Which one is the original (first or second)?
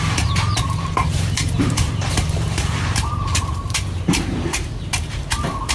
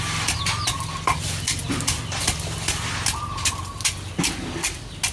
second